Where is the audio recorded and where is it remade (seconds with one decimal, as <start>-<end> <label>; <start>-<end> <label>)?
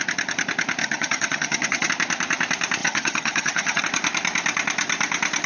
0.0-0.8 recorded; 0.8-1.9 remade; 1.9-2.8 recorded; 2.8-3.8 remade; 3.8-5.5 recorded